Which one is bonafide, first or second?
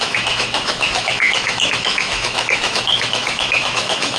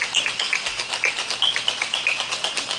second